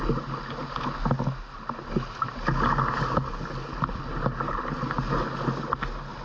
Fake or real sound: real